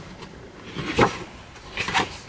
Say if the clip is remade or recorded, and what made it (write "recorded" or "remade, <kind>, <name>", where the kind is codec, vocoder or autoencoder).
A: recorded